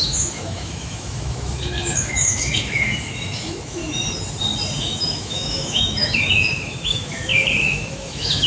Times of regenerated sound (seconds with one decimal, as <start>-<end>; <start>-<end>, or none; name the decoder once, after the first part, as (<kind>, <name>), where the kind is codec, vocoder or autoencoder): 0.0-3.8 (autoencoder, DAC-VAE); 4.8-8.5